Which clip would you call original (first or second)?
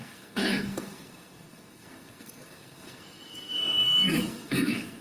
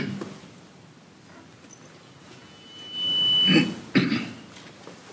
second